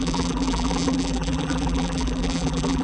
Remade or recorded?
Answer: remade